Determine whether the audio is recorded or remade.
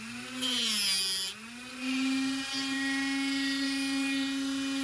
recorded